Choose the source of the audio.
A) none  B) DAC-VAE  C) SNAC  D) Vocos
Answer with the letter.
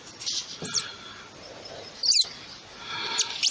A